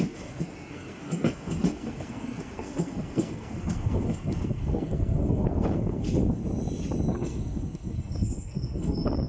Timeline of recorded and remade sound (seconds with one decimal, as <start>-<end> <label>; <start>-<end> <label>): 0.0-6.4 remade; 6.4-7.1 recorded; 7.1-9.3 remade